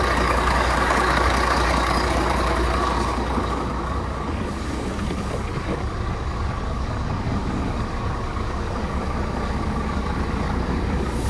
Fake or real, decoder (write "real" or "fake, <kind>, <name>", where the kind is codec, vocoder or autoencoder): fake, codec, DAC